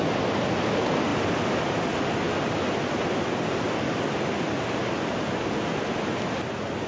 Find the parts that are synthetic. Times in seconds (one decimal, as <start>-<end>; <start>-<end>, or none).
none